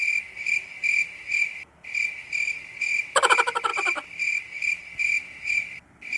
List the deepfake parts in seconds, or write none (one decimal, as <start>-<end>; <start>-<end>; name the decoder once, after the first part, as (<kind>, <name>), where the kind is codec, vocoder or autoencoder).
none

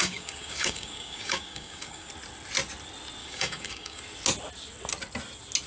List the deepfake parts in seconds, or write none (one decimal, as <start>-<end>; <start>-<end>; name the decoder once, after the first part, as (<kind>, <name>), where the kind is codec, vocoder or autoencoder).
0.0-2.1 (codec, DAC); 3.2-4.0